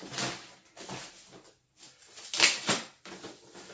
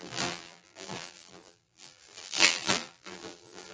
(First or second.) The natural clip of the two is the first